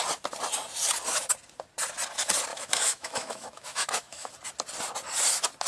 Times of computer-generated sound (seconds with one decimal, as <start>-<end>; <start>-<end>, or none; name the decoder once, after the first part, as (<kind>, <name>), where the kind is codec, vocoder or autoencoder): 2.5-4.3 (autoencoder, DAC-VAE)